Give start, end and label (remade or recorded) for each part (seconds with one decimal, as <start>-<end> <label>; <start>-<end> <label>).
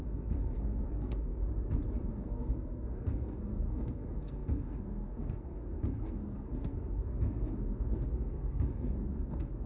0.0-1.4 remade; 1.4-2.1 recorded; 2.1-9.7 remade